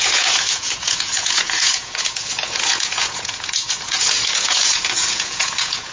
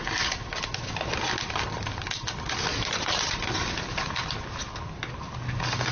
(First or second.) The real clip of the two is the second